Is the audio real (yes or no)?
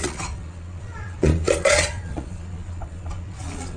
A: no